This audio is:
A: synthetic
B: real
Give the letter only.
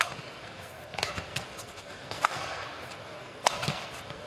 A